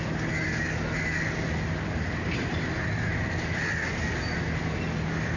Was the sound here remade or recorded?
recorded